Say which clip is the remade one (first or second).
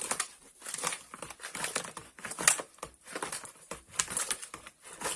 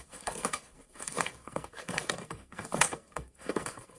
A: second